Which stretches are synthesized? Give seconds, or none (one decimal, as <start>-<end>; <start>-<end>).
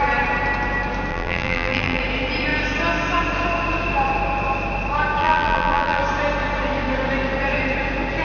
1.1-2.0; 5.2-6.0